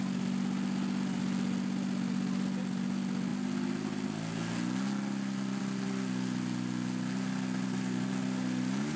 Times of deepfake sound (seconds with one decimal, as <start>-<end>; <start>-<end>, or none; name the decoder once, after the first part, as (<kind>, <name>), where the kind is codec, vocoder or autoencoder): none